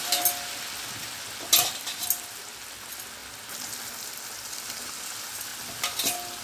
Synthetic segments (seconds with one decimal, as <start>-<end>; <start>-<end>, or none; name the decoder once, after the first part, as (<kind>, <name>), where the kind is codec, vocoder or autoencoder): none